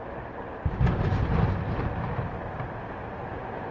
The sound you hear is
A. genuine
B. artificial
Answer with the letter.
A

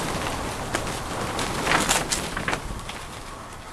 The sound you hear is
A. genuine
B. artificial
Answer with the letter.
A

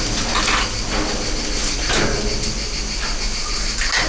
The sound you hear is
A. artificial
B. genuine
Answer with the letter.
B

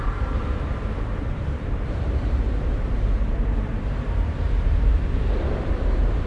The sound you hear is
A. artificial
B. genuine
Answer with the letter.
A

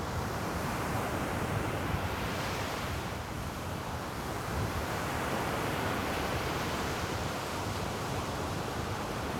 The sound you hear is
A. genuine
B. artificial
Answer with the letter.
B